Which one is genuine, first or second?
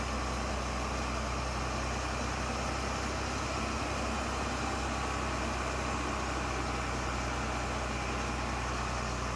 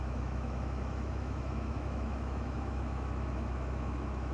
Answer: first